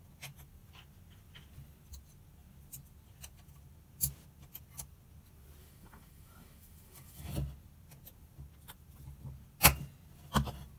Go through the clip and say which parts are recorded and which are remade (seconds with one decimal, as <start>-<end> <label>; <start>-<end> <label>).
0.0-5.6 recorded; 5.6-7.3 remade; 7.3-10.8 recorded

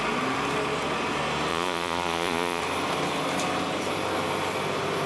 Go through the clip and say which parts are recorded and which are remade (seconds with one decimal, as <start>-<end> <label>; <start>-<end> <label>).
0.0-1.5 recorded; 1.5-2.6 remade; 2.6-5.1 recorded